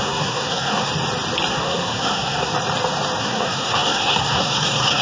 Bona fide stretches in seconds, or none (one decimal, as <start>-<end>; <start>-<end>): 0.9-1.5; 2.5-3.2